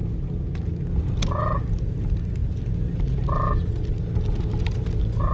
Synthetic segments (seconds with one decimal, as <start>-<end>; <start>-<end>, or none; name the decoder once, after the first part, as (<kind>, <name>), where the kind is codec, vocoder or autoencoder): none